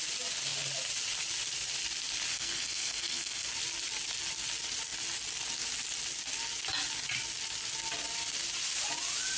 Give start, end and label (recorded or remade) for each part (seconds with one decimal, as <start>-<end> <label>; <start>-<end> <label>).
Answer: 0.0-2.3 recorded; 2.3-3.5 remade; 3.5-9.4 recorded